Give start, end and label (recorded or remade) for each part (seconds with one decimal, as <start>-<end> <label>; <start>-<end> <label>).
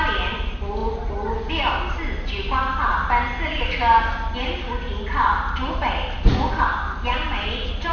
0.0-7.9 recorded